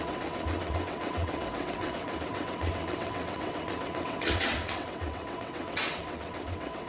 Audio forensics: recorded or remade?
remade